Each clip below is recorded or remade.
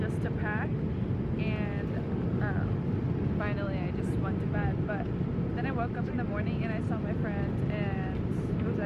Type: recorded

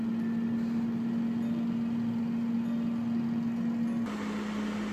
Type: recorded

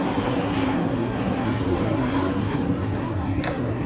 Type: remade